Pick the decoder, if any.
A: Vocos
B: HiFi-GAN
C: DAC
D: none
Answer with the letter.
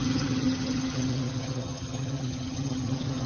B